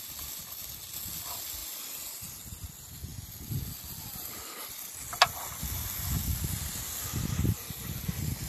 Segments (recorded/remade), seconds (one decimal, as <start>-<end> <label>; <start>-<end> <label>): 0.0-8.5 recorded

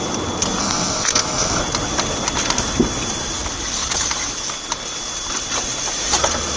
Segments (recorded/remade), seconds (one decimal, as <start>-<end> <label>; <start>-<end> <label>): 0.0-0.6 recorded; 0.6-1.6 remade; 1.6-6.6 recorded

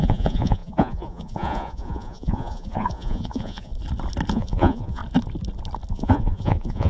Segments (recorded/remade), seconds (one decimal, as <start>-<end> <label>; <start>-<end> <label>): 0.0-3.7 remade; 3.7-4.3 recorded; 4.3-5.0 remade; 5.0-5.9 recorded; 5.9-6.9 remade